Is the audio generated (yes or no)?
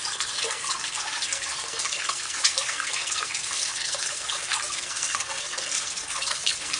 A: yes